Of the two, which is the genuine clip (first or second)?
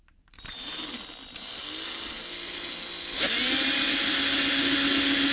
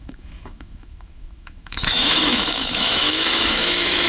first